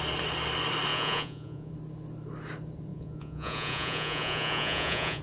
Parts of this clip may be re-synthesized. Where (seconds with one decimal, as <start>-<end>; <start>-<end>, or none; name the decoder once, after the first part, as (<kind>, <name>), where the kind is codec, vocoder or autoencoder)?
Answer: 0.9-1.7 (vocoder, Vocos); 2.9-5.2